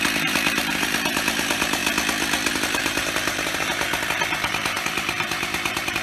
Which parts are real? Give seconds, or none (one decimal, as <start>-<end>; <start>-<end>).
1.8-2.5; 3.9-4.5